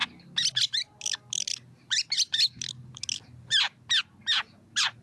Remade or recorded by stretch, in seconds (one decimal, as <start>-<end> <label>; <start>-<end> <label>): 0.0-5.0 recorded